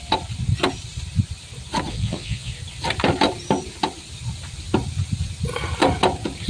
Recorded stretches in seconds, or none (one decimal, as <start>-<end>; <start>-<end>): 0.0-1.9; 2.5-6.5